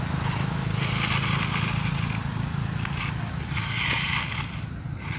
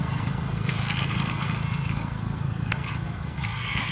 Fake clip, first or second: second